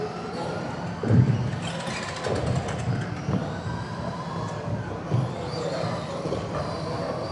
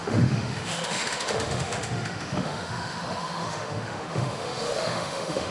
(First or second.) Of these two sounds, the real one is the first